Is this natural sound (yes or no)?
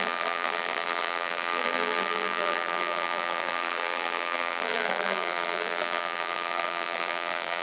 no